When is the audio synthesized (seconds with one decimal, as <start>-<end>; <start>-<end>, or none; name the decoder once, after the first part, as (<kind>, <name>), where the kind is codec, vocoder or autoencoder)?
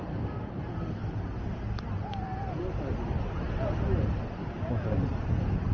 4.4-5.0 (codec, DAC)